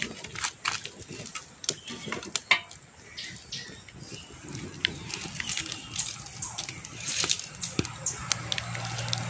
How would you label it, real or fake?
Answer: real